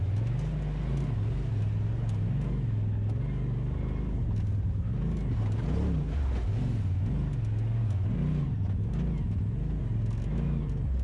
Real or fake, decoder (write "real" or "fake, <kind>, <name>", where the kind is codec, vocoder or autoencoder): real